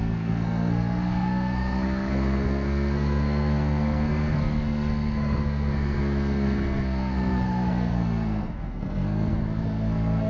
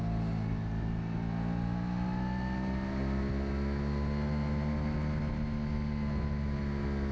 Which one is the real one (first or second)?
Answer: second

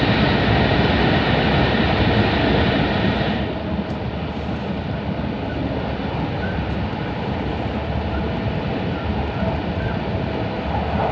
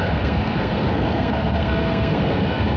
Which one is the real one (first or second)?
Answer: first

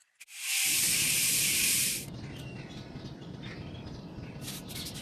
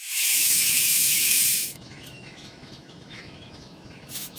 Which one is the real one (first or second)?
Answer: first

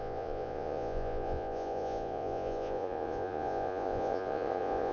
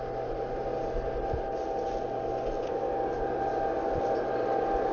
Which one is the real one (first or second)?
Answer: second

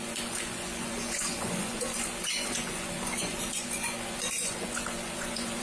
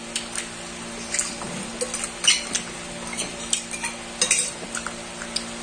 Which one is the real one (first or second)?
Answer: second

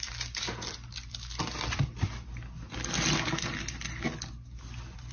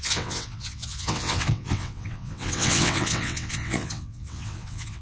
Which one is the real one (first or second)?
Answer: first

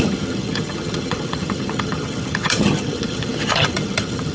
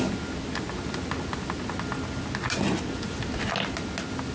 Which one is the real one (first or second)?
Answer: second